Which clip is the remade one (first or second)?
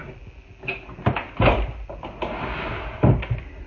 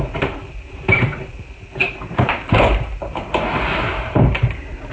second